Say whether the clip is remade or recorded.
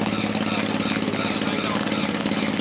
recorded